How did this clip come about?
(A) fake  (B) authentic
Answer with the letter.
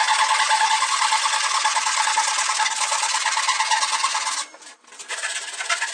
B